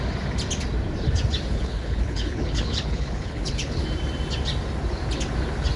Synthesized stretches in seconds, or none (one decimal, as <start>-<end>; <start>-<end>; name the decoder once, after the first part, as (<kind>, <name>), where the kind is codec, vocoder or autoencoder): 1.5-3.8 (codec, HILCodec)